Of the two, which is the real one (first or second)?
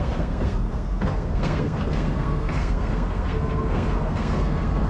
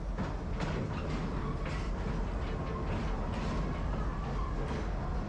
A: second